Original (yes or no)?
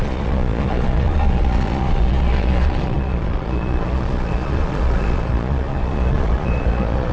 no